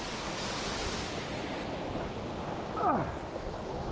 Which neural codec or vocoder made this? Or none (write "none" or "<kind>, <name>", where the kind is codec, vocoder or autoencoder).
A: none